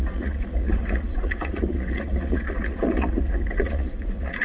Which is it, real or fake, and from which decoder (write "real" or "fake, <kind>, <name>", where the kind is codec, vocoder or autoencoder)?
fake, vocoder, Vocos